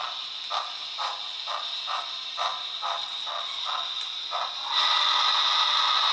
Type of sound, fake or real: real